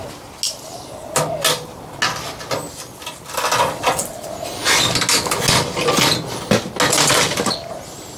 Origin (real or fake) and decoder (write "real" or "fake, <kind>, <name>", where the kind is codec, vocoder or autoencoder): real